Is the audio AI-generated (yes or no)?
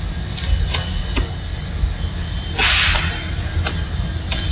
no